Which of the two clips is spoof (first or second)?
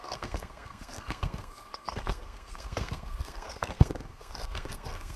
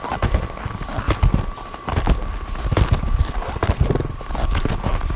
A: first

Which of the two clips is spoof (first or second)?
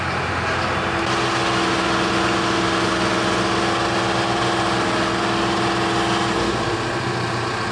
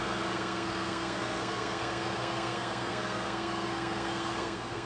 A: second